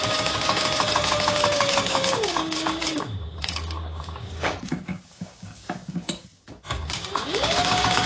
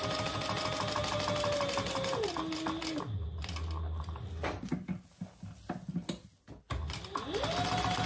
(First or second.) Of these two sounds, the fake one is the first